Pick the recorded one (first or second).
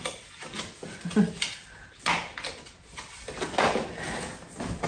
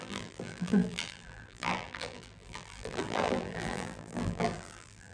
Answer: first